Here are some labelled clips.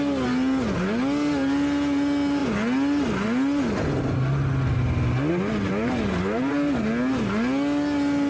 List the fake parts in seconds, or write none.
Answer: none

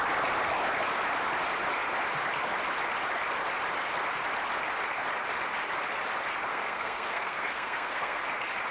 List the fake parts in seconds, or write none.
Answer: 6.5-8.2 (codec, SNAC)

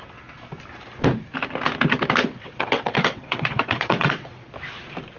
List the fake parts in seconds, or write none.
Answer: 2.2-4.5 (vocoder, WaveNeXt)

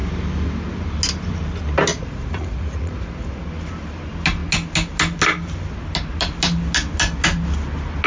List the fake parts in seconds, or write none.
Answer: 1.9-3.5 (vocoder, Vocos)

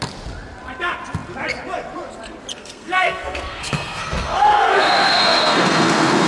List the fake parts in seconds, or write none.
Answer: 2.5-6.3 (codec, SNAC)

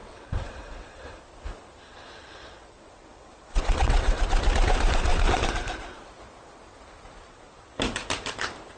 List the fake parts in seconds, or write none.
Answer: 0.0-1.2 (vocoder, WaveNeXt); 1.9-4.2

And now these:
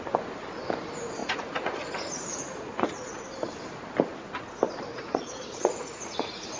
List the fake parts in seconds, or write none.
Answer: 1.2-3.2 (vocoder, Vocos); 4.9-6.6